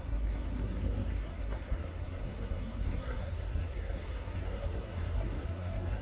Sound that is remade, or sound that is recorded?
remade